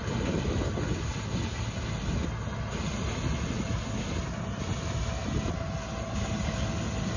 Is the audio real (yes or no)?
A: yes